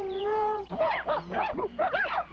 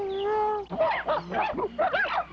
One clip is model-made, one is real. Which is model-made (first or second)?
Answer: first